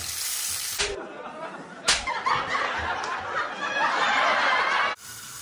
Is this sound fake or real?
real